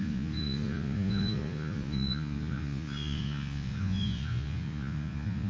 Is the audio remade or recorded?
remade